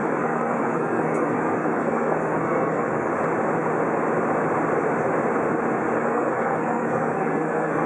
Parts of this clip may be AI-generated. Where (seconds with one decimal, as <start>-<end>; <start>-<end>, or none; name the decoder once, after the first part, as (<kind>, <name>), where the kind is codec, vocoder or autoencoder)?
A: 0.0-3.1 (codec, SNAC); 6.0-7.9

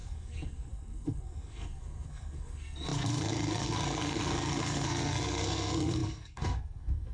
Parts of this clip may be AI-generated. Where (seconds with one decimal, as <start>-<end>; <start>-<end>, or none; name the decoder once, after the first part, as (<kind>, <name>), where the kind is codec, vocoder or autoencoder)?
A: 0.0-7.1 (codec, SNAC)

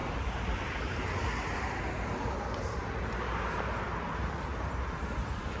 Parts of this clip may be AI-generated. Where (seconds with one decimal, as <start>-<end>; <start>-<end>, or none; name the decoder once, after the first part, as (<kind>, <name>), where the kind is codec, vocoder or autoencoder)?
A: none

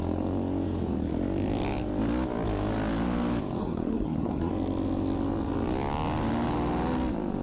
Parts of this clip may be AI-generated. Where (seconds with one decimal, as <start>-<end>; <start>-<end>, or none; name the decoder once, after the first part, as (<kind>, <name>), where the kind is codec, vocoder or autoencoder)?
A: 3.6-4.5 (codec, SNAC)

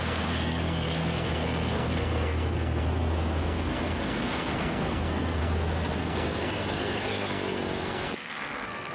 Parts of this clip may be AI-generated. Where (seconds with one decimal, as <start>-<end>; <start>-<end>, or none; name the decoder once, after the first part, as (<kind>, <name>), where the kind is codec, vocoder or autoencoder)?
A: 0.0-8.9 (codec, SNAC)